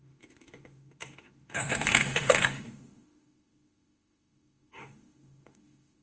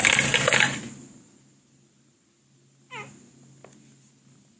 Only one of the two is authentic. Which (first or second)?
second